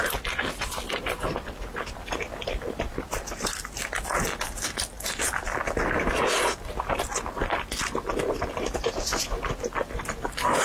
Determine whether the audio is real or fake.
real